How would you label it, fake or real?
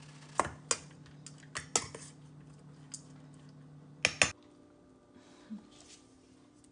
real